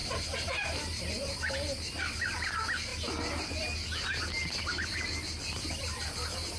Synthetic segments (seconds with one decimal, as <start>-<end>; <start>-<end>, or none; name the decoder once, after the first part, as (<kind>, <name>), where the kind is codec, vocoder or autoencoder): 0.0-1.5 (vocoder, BigVGAN v2)